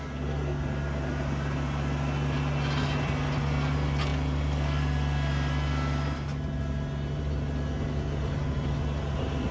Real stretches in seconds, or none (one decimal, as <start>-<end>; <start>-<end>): 0.0-9.5